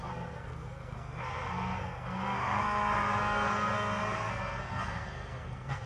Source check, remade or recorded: remade